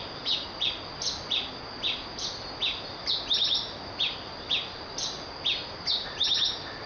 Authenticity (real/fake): real